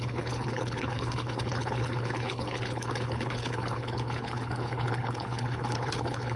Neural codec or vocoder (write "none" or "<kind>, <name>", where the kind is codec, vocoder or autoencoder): codec, HILCodec